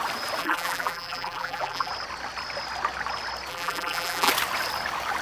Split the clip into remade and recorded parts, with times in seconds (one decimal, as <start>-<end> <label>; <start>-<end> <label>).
0.0-0.4 recorded; 0.4-1.9 remade; 1.9-3.5 recorded; 3.5-4.3 remade; 4.3-5.2 recorded